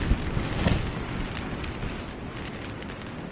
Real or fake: real